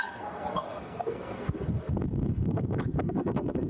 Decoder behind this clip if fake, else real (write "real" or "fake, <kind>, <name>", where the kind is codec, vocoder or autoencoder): fake, codec, SNAC